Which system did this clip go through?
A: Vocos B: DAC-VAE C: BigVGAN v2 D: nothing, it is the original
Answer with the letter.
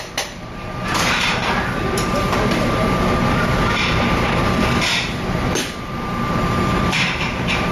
C